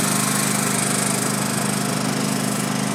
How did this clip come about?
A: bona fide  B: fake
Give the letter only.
A